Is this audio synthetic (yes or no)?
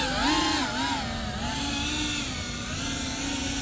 no